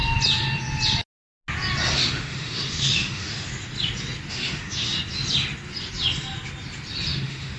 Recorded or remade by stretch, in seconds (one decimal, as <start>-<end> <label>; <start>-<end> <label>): 0.0-1.9 recorded; 1.9-3.5 remade; 3.5-4.3 recorded; 4.3-4.9 remade; 4.9-7.1 recorded; 7.1-7.6 remade